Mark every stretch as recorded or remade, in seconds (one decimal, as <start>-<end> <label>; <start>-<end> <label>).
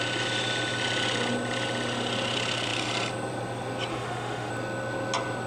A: 0.0-3.9 recorded; 3.9-4.5 remade; 4.5-5.5 recorded